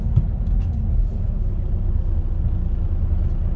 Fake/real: real